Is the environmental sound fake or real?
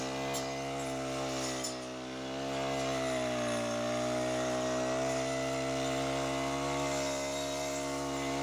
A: real